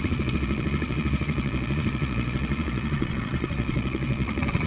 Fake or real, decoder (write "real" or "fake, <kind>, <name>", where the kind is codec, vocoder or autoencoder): fake, vocoder, Vocos